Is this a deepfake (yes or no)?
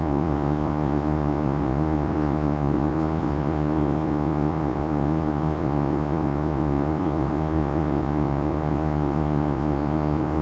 yes